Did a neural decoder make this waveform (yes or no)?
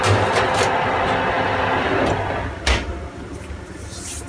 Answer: no